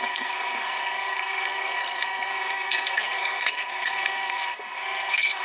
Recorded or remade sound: remade